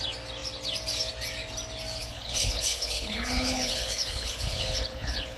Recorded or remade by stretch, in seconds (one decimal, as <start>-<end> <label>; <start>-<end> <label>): 0.0-2.0 recorded; 2.0-5.4 remade

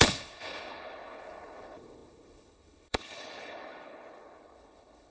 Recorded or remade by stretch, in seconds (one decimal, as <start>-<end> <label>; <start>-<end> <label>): 0.0-5.1 remade

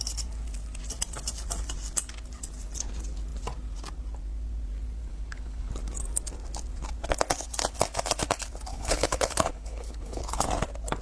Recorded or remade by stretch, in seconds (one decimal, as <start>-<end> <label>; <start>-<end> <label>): 0.0-5.1 recorded; 5.1-5.7 remade; 5.7-8.7 recorded; 8.7-10.5 remade; 10.5-11.0 recorded